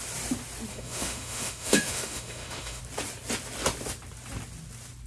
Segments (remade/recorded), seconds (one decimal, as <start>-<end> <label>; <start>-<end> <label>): 0.0-0.7 recorded; 0.7-2.8 remade; 2.8-5.1 recorded